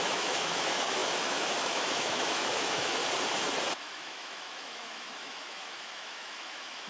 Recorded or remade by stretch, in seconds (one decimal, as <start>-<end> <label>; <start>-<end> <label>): 0.0-3.0 remade; 3.0-3.8 recorded; 3.8-6.9 remade